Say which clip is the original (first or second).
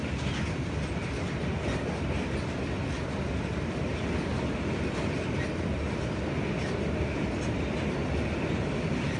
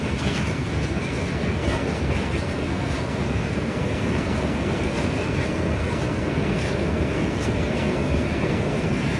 first